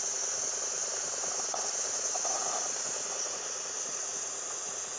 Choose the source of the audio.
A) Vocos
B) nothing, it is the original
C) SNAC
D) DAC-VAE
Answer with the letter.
A